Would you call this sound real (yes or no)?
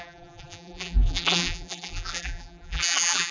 no